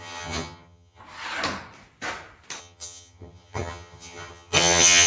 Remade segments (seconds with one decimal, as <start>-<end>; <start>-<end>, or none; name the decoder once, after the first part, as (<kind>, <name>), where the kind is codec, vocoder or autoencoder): 0.0-1.0 (vocoder, HiFi-GAN); 2.6-5.1